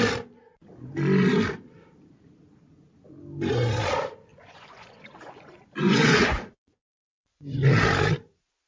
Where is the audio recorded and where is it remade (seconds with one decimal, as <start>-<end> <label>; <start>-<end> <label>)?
0.0-4.3 recorded; 4.3-7.6 remade; 7.6-8.7 recorded